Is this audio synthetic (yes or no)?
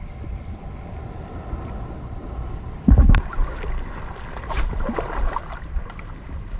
no